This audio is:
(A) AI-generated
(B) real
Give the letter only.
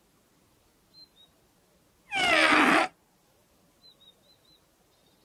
B